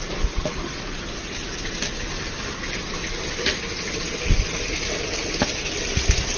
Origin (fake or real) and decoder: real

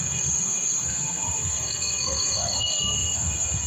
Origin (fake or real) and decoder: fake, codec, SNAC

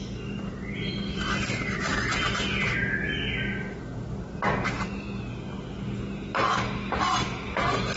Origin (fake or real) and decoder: real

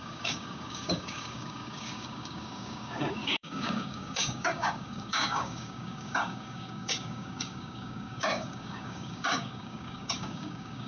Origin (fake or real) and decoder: fake, codec, DAC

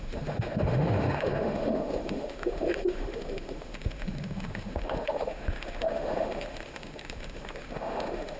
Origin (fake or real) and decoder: fake, autoencoder, DAC-VAE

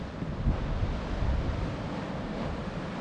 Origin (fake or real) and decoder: real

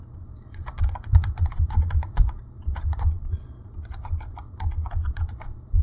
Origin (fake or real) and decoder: fake, vocoder, Vocos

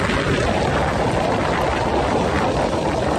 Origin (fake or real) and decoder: real